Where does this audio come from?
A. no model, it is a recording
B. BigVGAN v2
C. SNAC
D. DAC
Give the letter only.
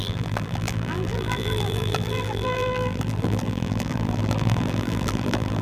B